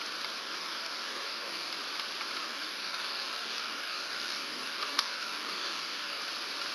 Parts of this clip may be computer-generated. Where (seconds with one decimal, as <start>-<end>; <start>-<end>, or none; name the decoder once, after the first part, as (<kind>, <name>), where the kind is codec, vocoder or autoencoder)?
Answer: 0.4-1.7 (codec, DAC); 2.4-6.2